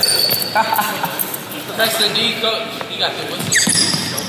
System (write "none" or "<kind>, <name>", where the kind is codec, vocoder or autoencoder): none